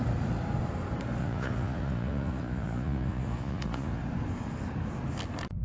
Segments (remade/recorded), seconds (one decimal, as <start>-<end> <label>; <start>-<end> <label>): 0.0-1.2 recorded; 1.2-4.0 remade; 4.0-5.6 recorded